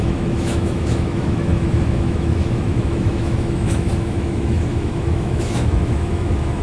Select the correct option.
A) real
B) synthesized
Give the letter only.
B